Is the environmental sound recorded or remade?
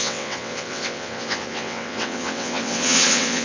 remade